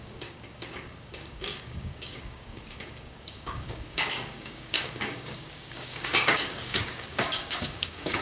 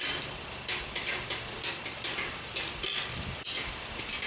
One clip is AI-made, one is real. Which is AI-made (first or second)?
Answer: first